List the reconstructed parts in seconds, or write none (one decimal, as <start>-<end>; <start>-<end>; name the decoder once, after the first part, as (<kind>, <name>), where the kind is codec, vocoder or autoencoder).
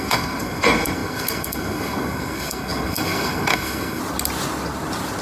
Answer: 0.0-4.0 (codec, SNAC)